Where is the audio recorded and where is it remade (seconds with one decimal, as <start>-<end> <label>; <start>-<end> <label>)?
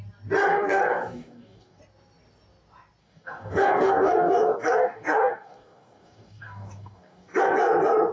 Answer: 0.0-0.5 recorded; 0.5-1.8 remade; 1.8-3.0 recorded; 3.0-7.4 remade; 7.4-8.1 recorded